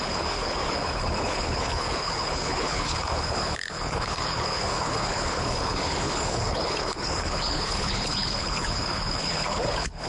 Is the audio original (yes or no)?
no